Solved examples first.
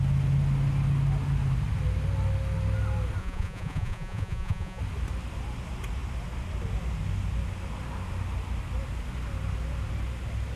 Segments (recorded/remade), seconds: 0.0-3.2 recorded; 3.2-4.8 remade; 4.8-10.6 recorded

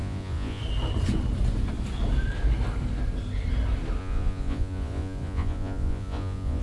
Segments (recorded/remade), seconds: 0.0-0.6 remade; 0.6-4.0 recorded; 4.0-6.6 remade

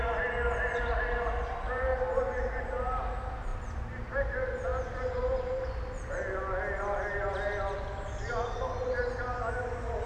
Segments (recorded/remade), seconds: 0.0-10.1 recorded

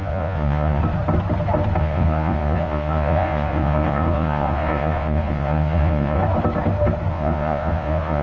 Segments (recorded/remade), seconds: 0.0-0.8 remade; 0.8-1.8 recorded; 1.8-6.2 remade; 6.2-7.1 recorded; 7.1-8.2 remade

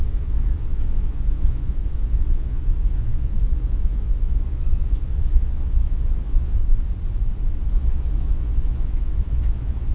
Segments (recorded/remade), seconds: 0.0-6.6 remade; 6.6-7.7 recorded; 7.7-9.9 remade

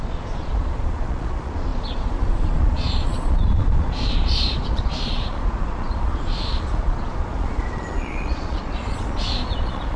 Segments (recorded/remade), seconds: 0.0-10.0 remade